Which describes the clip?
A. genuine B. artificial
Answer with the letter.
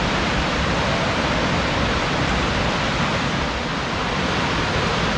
A